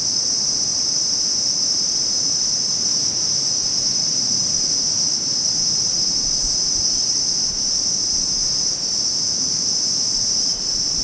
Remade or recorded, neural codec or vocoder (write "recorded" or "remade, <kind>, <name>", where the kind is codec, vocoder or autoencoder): remade, vocoder, BigVGAN v2